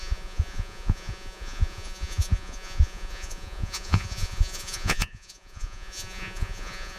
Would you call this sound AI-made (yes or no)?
yes